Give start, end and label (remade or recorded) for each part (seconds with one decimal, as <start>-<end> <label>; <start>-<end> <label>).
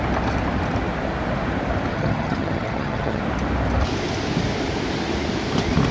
0.0-1.9 recorded; 1.9-3.2 remade; 3.2-5.9 recorded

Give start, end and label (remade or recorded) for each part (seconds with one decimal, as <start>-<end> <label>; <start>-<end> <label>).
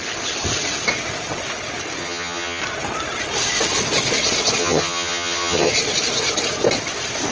0.0-2.0 recorded; 2.0-2.6 remade; 2.6-4.6 recorded; 4.6-5.7 remade; 5.7-7.3 recorded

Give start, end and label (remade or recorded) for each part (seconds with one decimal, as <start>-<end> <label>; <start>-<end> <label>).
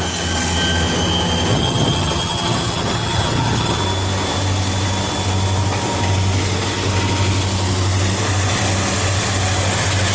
0.0-1.5 recorded; 1.5-3.8 remade; 3.8-10.1 recorded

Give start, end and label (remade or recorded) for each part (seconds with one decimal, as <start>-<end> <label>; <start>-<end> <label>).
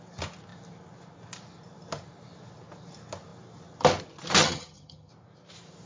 0.0-4.4 recorded; 4.4-5.1 remade; 5.1-5.9 recorded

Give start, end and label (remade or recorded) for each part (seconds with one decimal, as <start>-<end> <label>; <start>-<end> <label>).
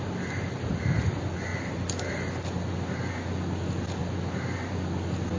0.0-5.4 recorded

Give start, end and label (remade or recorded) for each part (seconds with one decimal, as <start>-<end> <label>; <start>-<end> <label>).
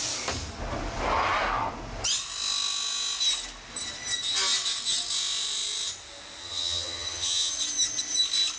0.0-6.4 recorded; 6.4-7.5 remade; 7.5-8.6 recorded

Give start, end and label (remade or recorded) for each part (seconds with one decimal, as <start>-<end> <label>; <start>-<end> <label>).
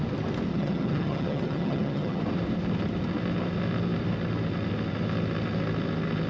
0.0-0.5 recorded; 0.5-2.2 remade; 2.2-6.3 recorded